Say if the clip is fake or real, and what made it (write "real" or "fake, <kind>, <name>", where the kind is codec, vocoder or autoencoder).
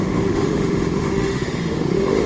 fake, autoencoder, DAC-VAE